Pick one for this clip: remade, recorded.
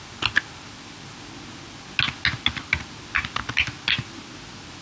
recorded